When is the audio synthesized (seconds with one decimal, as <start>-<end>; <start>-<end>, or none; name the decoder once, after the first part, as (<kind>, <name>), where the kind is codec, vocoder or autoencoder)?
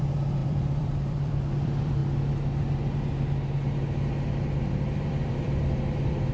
0.0-2.0 (vocoder, BigVGAN v2); 4.6-6.3